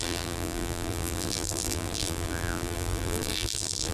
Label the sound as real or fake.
fake